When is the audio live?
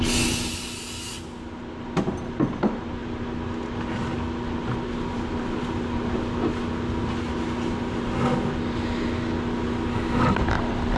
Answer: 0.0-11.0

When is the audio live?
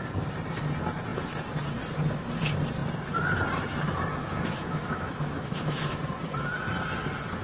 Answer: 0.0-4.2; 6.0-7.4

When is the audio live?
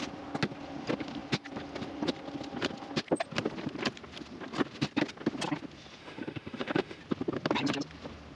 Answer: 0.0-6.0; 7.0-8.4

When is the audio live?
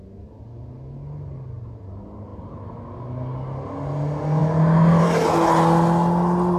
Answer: 0.0-6.6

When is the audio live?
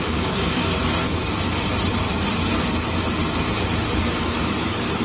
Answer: 1.2-4.2